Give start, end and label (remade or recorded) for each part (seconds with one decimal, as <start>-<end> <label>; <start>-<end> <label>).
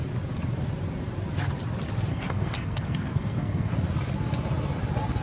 0.0-2.1 recorded; 2.1-3.7 remade; 3.7-5.2 recorded